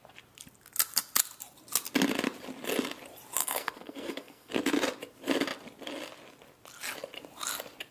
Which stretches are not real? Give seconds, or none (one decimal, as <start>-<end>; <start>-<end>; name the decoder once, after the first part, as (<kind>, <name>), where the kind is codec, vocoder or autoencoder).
3.4-4.5 (codec, SNAC)